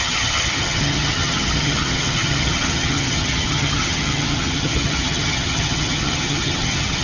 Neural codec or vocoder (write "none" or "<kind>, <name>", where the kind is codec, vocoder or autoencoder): vocoder, HiFi-GAN